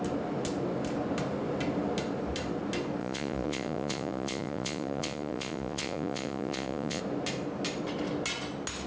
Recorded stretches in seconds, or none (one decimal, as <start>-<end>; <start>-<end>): 0.0-3.0; 7.0-8.9